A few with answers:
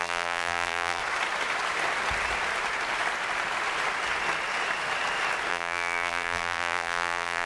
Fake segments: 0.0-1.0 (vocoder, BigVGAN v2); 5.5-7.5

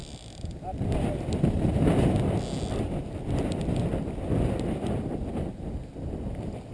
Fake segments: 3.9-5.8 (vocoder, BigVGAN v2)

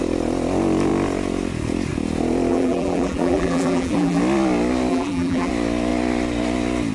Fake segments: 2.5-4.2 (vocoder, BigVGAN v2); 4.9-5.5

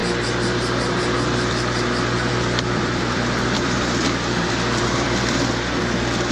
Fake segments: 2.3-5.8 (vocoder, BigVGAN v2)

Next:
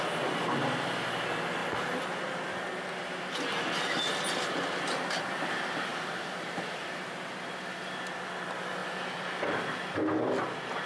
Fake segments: 5.9-7.4 (vocoder, BigVGAN v2)